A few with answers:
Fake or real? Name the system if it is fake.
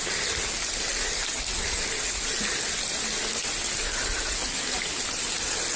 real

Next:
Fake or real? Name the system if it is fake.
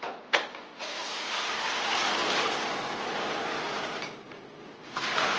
real